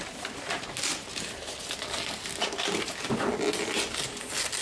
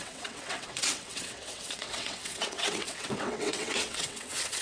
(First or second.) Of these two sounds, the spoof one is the second